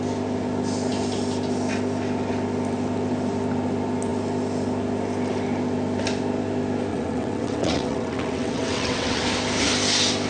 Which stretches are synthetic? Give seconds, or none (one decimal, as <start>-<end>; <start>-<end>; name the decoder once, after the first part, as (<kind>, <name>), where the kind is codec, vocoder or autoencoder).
6.9-9.2 (vocoder, WaveNeXt)